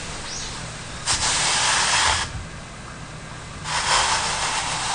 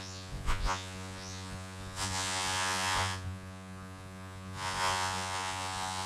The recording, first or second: first